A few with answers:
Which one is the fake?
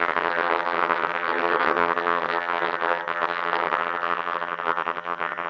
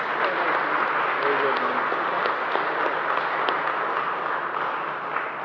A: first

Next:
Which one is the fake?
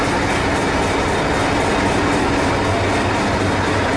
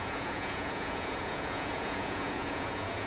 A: second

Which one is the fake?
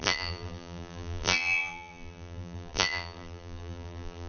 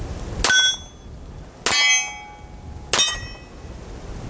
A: first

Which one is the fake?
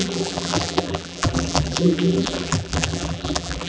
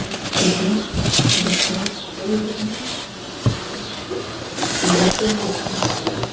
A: first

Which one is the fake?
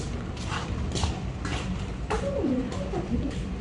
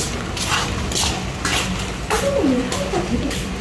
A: first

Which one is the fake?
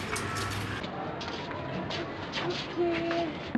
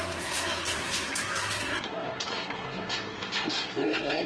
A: second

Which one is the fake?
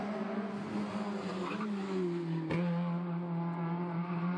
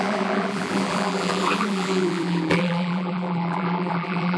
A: second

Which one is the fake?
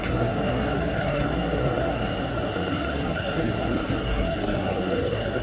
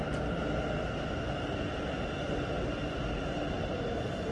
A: first